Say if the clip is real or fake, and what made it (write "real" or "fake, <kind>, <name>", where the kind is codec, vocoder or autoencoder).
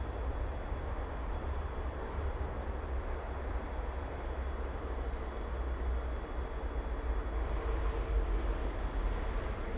real